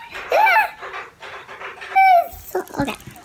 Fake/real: real